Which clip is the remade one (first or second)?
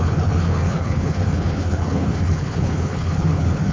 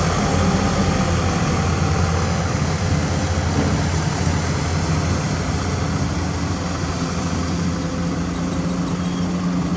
first